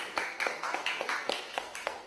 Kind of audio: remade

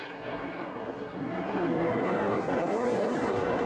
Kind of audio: remade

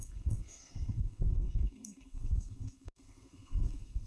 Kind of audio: remade